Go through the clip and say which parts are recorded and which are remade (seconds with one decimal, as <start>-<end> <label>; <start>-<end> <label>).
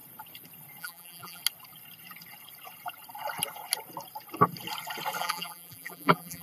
0.0-0.8 recorded; 0.8-1.4 remade; 1.4-5.2 recorded; 5.2-6.4 remade